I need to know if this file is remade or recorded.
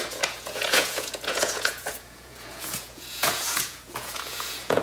remade